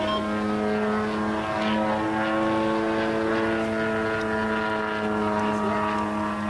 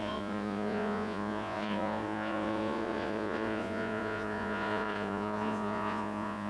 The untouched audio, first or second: first